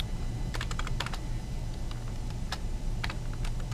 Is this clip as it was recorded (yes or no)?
no